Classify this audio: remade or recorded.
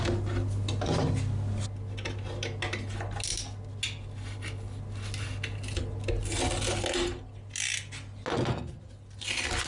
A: recorded